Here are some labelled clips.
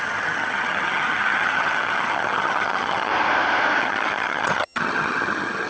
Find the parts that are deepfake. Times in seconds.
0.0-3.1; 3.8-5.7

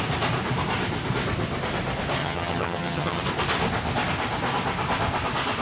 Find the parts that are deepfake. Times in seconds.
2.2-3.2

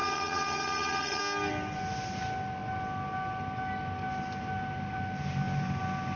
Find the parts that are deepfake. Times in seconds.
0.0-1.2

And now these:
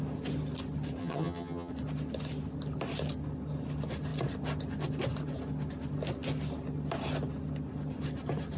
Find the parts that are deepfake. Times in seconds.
1.0-1.7

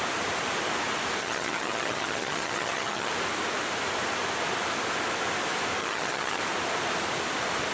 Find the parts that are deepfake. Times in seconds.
1.2-3.1; 5.8-6.4

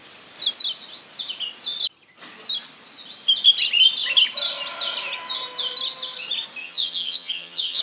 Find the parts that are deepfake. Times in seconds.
6.6-7.8

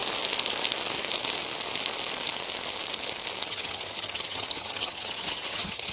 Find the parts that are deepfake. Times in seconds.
3.5-5.9

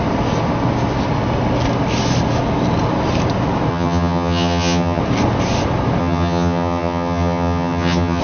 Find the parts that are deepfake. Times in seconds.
3.7-5.0; 6.0-8.2